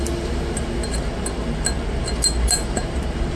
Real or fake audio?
real